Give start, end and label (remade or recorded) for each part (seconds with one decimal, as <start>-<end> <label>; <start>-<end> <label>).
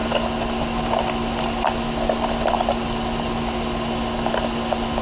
0.0-5.0 recorded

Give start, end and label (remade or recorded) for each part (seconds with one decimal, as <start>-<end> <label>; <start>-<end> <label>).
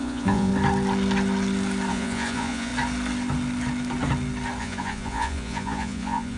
0.0-0.5 remade; 0.5-1.9 recorded; 1.9-2.7 remade; 2.7-4.6 recorded; 4.6-6.4 remade